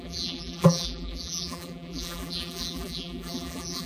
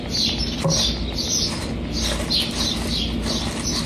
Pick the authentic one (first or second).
second